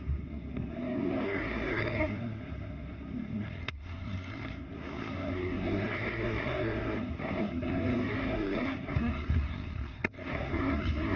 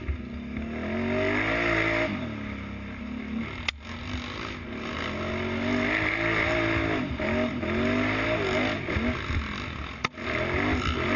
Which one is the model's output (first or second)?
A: first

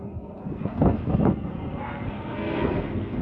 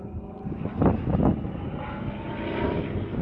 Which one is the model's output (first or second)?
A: first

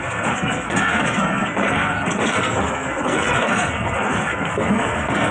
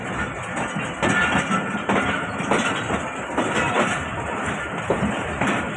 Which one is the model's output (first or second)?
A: first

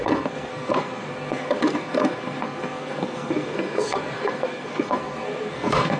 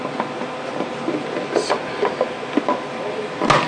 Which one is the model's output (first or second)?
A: first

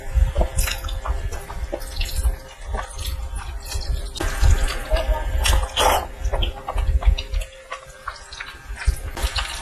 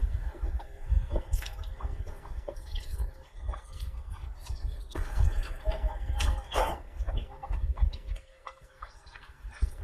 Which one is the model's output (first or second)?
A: second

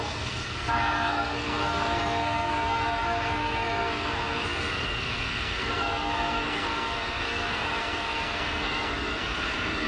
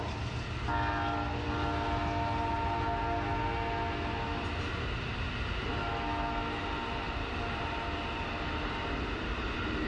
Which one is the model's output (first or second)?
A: first